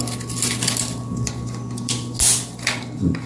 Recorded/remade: recorded